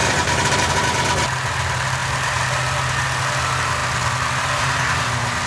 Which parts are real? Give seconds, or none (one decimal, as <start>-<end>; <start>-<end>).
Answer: 0.7-5.5